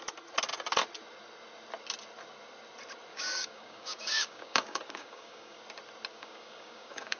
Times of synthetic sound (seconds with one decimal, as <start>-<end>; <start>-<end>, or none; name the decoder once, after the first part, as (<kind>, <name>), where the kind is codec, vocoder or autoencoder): 3.1-5.6 (codec, DAC); 6.1-7.2